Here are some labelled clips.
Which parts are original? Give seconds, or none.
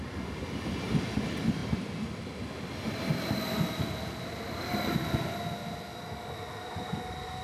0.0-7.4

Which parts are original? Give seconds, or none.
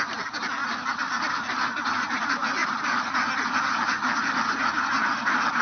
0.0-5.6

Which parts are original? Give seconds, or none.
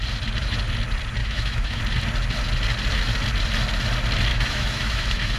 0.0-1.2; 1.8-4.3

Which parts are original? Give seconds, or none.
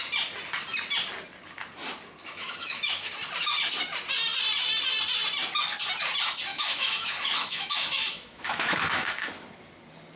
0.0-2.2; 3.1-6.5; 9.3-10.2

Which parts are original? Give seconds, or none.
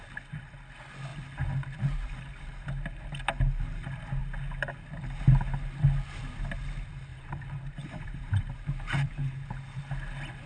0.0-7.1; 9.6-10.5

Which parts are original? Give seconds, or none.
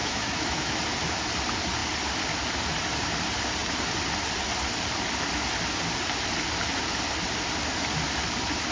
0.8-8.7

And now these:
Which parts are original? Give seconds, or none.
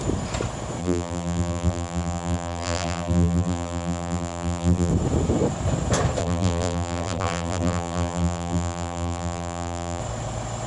0.0-0.8; 4.9-6.2; 10.0-10.7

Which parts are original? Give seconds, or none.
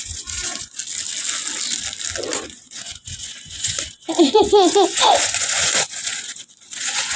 0.8-2.4